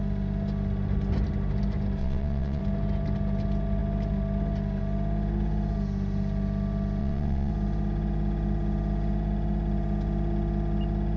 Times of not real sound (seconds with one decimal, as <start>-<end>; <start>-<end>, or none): 2.0-2.6; 7.0-7.5